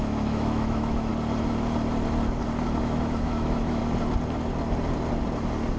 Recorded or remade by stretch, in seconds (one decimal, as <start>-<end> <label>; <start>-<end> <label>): 0.0-1.1 remade; 1.1-2.8 recorded; 2.8-3.8 remade; 3.8-5.8 recorded